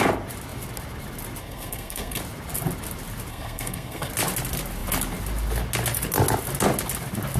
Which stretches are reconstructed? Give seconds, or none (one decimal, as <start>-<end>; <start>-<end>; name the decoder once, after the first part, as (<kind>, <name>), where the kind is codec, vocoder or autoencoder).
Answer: 1.4-2.2 (codec, SNAC); 3.3-4.1